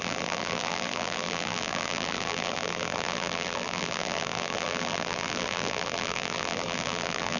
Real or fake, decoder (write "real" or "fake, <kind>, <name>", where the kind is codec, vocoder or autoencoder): fake, vocoder, BigVGAN v2